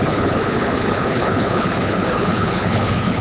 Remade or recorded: remade